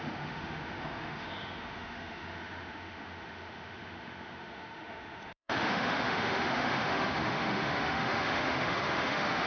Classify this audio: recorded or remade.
remade